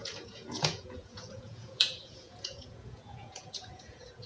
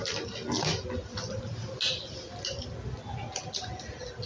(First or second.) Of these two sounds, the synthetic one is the first